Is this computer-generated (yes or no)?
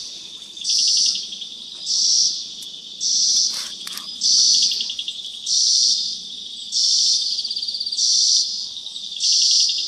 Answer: yes